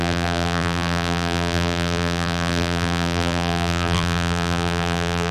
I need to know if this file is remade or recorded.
remade